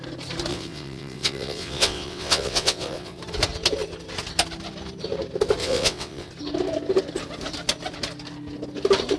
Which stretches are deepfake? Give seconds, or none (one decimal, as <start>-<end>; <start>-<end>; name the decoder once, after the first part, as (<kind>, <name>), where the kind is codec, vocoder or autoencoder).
0.5-3.2 (vocoder, WaveNeXt); 5.6-6.3